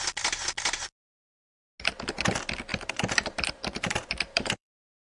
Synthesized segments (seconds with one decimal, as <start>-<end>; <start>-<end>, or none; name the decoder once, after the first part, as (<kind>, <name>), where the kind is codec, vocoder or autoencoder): 2.7-5.1 (vocoder, BigVGAN v2)